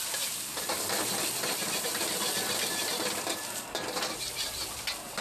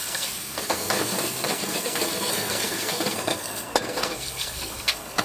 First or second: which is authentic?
first